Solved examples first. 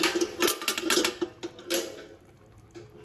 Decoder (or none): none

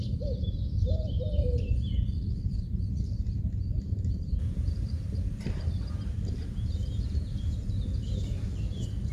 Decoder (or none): vocoder, BigVGAN v2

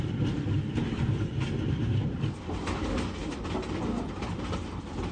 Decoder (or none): none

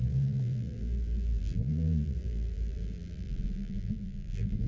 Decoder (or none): vocoder, BigVGAN v2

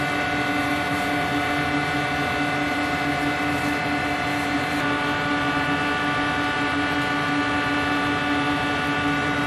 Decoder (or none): none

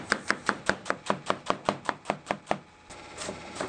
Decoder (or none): vocoder, BigVGAN v2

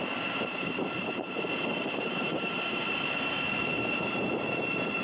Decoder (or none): vocoder, BigVGAN v2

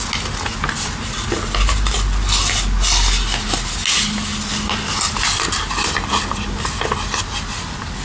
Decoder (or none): none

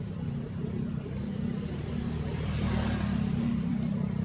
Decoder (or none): vocoder, BigVGAN v2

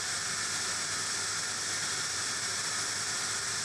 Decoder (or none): none